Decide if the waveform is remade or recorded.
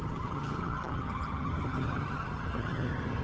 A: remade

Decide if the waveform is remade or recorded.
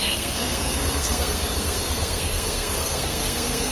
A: remade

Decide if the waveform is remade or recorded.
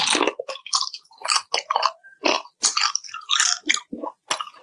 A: recorded